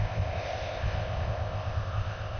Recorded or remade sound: remade